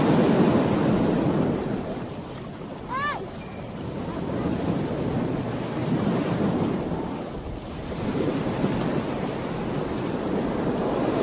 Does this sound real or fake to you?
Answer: real